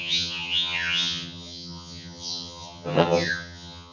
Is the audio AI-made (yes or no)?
yes